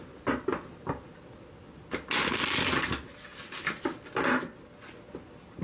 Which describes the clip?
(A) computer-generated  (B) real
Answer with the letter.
B